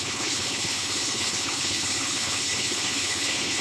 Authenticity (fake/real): fake